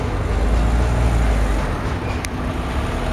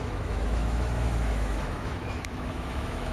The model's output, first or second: second